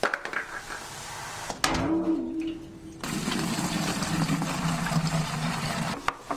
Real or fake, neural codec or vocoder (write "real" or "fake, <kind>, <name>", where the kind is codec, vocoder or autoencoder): real